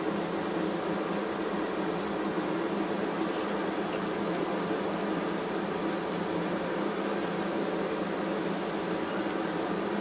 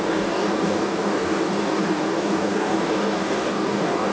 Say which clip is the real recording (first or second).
first